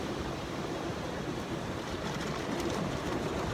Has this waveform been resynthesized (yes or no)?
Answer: yes